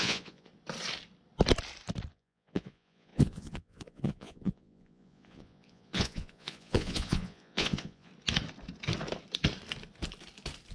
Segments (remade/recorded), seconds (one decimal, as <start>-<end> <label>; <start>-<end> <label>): 0.0-0.5 remade; 0.5-2.1 recorded; 2.1-8.1 remade; 8.1-10.7 recorded